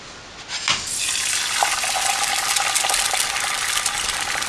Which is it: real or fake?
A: real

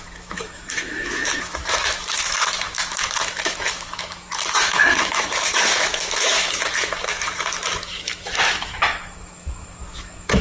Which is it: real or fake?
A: fake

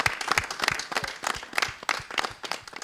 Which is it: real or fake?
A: real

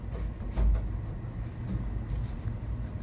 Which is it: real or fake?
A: real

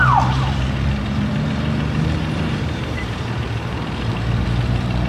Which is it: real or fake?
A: fake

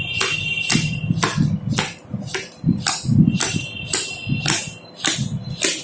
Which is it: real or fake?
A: real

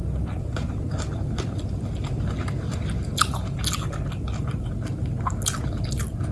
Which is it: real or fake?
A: real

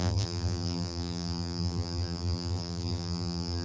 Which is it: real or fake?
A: fake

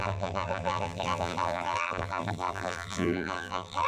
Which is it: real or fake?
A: fake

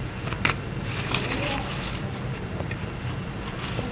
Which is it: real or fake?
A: real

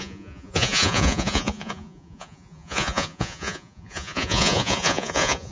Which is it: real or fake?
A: fake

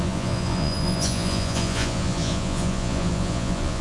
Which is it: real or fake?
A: fake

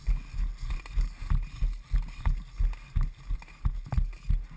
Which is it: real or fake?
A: real